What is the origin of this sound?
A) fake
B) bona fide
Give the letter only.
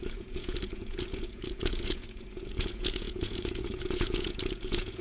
A